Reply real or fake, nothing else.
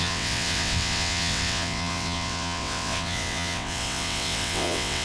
fake